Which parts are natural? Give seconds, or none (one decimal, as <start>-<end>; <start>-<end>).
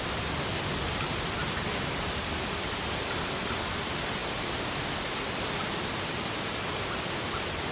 0.0-7.7